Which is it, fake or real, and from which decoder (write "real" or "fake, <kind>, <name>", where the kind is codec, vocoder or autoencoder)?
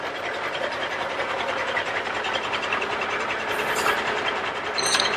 fake, vocoder, BigVGAN v2